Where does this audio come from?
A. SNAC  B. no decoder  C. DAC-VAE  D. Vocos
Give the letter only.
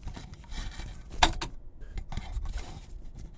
B